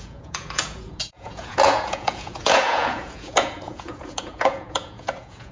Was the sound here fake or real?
fake